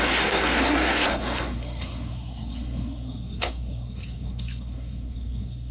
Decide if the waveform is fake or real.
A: fake